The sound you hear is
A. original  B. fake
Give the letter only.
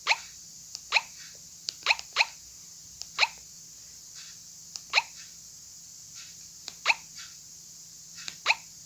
A